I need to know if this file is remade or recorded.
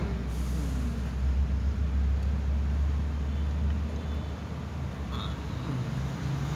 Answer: recorded